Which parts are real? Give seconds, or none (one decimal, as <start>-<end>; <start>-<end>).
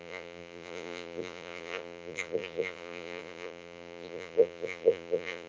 none